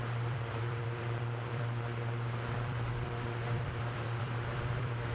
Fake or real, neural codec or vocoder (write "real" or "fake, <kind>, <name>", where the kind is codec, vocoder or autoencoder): fake, vocoder, BigVGAN v2